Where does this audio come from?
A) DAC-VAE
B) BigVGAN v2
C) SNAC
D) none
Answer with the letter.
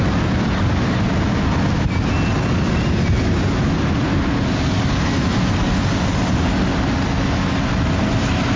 D